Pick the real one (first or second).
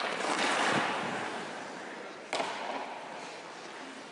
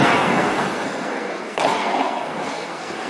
first